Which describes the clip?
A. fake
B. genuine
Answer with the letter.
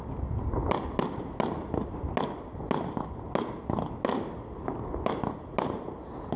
B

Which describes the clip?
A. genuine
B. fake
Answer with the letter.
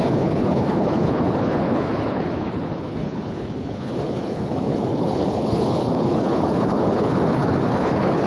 B